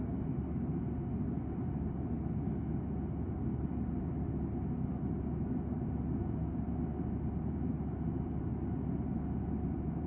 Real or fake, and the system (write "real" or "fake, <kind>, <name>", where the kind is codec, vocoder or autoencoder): real